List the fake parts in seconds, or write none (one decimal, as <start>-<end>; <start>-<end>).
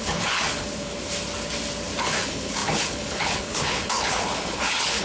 0.0-0.9; 2.0-5.0